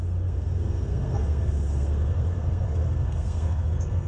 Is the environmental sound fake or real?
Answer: fake